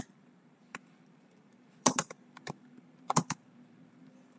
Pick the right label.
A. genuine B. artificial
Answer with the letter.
B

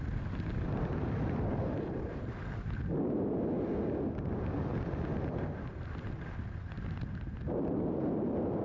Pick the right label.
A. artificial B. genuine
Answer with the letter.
B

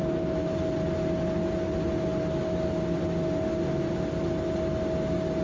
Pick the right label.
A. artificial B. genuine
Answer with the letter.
B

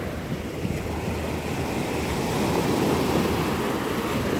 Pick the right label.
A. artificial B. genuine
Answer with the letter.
B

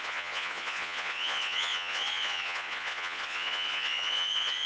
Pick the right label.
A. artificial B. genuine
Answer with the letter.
A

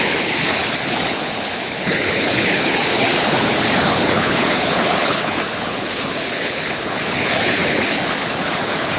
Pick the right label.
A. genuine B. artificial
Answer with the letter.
B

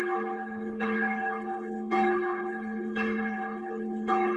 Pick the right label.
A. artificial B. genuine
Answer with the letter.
A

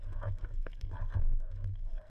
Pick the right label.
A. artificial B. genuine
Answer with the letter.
A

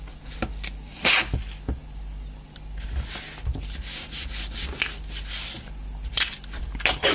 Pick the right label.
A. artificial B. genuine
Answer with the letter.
B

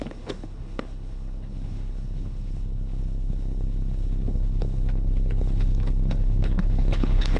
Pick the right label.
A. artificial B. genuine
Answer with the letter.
A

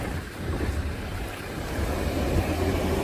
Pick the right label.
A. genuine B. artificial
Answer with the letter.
B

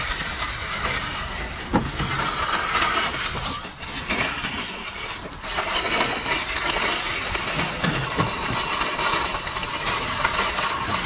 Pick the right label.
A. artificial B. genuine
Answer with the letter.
B